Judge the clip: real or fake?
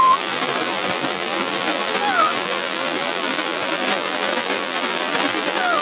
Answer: fake